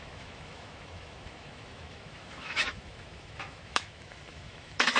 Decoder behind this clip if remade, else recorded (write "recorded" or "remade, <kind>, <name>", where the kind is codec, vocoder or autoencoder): remade, autoencoder, DAC-VAE